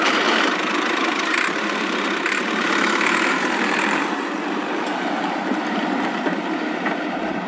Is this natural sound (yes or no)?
no